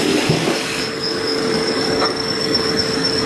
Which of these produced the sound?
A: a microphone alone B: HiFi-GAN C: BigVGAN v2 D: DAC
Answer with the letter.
D